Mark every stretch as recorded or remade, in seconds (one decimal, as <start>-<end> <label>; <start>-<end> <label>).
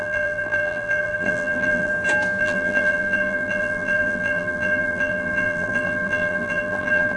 0.0-1.9 remade; 1.9-2.4 recorded; 2.4-7.2 remade